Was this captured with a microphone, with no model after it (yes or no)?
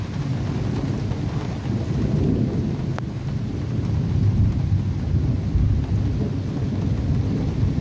yes